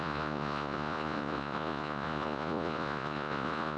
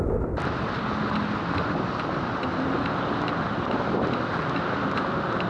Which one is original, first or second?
second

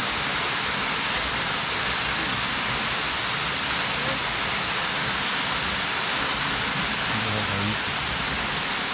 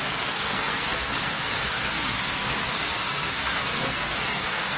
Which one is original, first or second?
first